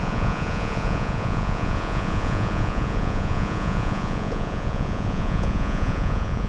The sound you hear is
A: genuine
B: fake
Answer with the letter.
B